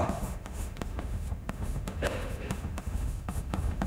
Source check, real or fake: fake